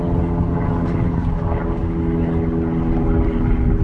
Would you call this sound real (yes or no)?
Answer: yes